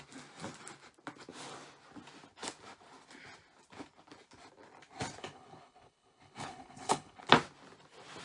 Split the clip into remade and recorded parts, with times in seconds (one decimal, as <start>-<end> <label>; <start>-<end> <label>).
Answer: 0.0-5.2 recorded; 5.2-7.2 remade; 7.2-8.2 recorded